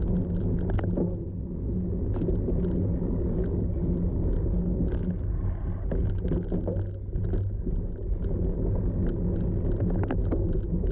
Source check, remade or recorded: recorded